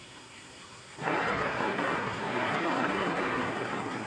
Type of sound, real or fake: fake